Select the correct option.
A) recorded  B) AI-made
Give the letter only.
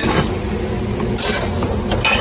A